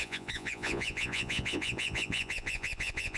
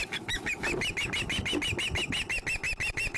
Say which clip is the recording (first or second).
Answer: second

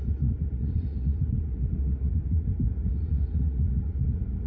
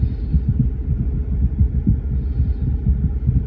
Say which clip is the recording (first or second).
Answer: second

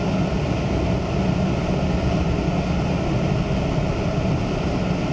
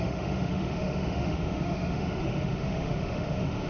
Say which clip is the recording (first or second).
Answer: first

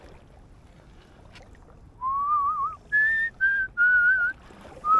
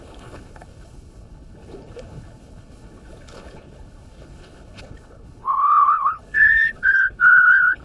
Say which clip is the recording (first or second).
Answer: first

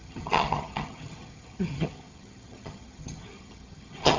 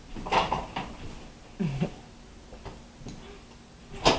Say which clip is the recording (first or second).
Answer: second